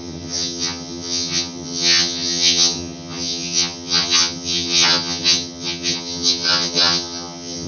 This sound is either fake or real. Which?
fake